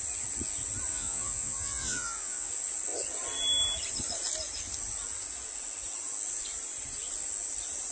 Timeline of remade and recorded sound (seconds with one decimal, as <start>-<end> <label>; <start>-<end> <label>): 0.0-0.9 recorded; 0.9-2.5 remade; 2.5-7.9 recorded